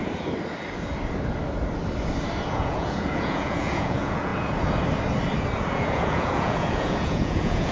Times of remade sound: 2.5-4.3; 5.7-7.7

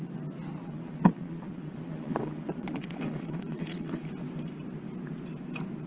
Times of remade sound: 0.6-4.1

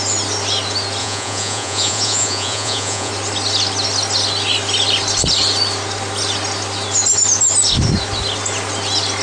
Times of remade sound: 1.0-3.1

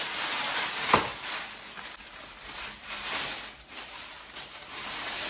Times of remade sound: none